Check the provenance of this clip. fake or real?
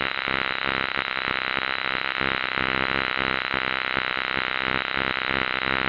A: real